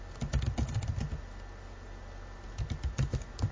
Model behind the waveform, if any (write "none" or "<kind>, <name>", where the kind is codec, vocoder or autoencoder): none